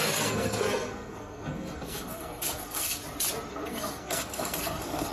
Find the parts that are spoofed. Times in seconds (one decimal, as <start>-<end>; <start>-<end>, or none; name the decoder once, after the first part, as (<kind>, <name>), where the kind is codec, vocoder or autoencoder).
0.0-3.0 (codec, SNAC); 3.5-5.1